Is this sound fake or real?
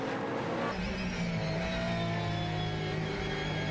real